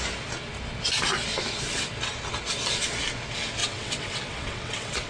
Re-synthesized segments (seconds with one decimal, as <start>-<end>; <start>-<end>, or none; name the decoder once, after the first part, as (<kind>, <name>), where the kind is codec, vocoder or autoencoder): 3.6-5.1 (vocoder, WaveNeXt)